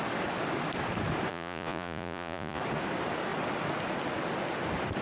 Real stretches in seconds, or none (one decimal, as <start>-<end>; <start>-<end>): 0.0-1.3; 2.6-5.0